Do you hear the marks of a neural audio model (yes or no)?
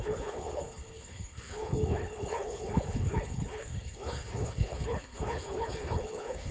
yes